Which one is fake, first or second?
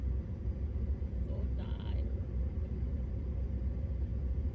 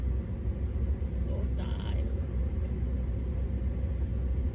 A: first